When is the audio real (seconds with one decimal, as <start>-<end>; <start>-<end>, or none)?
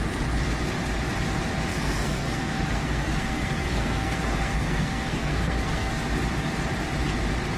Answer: 0.0-1.7; 6.0-7.6